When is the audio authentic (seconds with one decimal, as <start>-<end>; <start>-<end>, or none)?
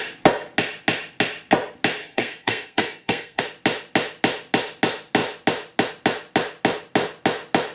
0.0-2.0; 3.4-7.7